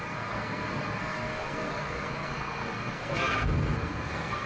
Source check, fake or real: fake